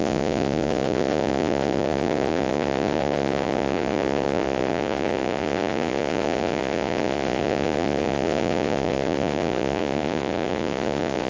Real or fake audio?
fake